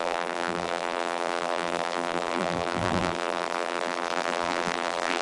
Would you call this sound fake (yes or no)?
yes